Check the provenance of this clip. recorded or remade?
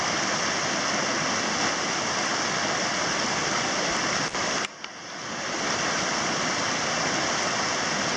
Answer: recorded